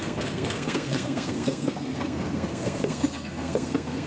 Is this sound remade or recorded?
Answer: remade